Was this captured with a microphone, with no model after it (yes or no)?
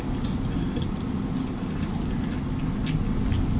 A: yes